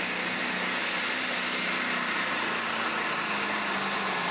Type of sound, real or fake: real